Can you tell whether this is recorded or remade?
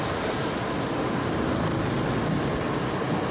recorded